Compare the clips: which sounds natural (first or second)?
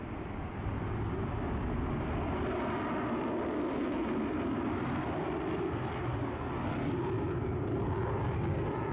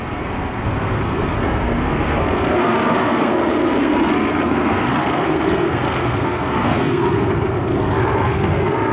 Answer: first